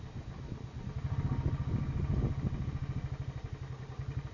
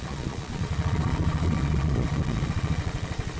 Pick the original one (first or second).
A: first